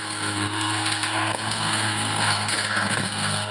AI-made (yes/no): yes